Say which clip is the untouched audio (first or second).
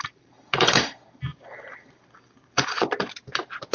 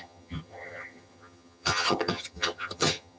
first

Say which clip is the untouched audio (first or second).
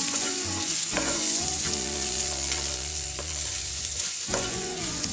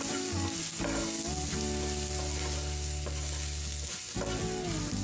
second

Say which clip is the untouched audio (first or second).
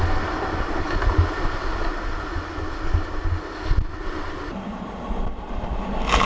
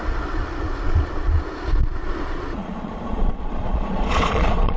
first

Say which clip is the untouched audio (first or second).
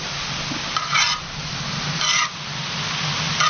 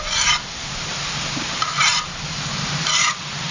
first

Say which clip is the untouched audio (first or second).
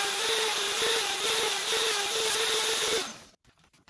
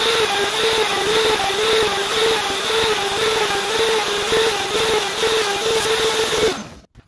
second